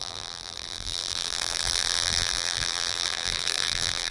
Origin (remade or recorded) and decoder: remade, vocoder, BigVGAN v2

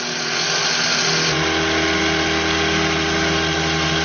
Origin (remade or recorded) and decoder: recorded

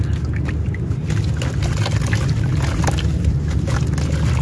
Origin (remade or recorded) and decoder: recorded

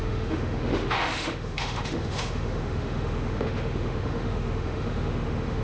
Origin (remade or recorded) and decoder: remade, autoencoder, DAC-VAE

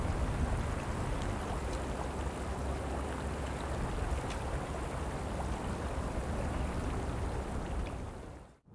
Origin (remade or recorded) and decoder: recorded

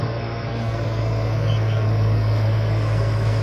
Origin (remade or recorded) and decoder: remade, codec, SNAC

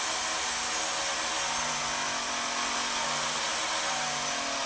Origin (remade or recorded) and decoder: recorded